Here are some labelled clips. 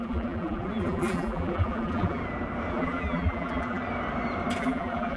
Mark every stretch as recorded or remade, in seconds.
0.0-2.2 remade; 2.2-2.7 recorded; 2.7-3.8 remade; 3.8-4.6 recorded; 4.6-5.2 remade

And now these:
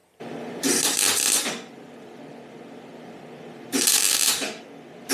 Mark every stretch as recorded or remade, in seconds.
0.0-5.1 recorded

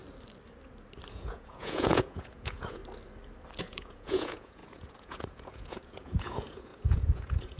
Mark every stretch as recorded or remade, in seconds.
0.0-1.1 recorded; 1.1-2.8 remade; 2.8-3.6 recorded; 3.6-7.6 remade

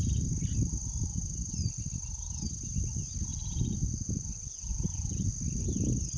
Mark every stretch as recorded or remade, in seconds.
0.0-3.3 recorded; 3.3-5.3 remade; 5.3-6.2 recorded

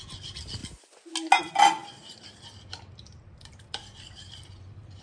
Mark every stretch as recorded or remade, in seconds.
0.0-1.8 recorded; 1.8-5.0 remade

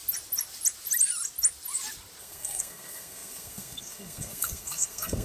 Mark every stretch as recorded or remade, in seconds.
0.0-2.2 recorded; 2.2-5.2 remade

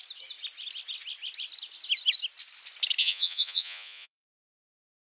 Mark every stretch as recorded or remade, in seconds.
0.0-3.0 recorded; 3.0-4.6 remade; 4.6-5.0 recorded